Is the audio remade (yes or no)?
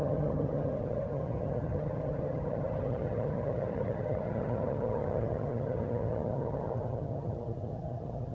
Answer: yes